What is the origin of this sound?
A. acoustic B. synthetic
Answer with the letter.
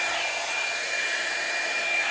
B